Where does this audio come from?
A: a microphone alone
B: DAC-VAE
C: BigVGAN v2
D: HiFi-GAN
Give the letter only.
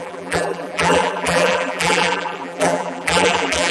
C